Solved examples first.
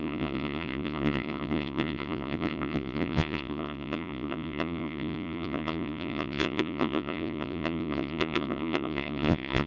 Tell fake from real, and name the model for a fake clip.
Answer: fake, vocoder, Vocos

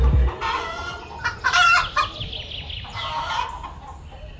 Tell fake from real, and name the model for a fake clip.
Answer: real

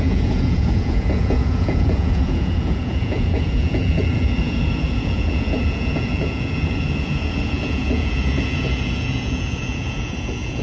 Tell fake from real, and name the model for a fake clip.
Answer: fake, vocoder, Vocos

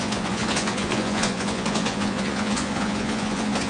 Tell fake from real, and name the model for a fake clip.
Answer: fake, vocoder, Vocos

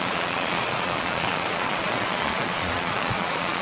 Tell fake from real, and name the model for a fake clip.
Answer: fake, vocoder, Vocos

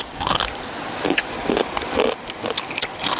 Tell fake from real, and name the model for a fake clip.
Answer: real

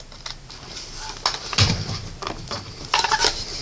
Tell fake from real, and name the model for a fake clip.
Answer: real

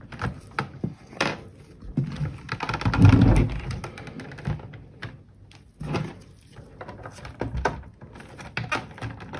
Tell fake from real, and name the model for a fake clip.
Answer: real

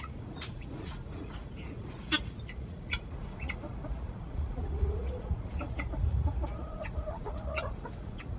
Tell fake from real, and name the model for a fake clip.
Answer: fake, vocoder, Vocos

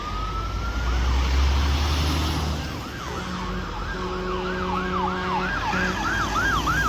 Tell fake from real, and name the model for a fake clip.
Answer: real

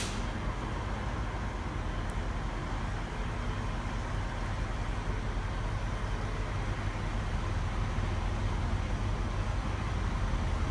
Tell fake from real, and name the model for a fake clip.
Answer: real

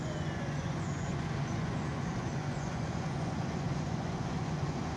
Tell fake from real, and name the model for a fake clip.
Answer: fake, vocoder, Vocos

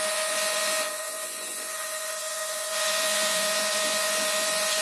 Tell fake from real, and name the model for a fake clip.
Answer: fake, vocoder, Vocos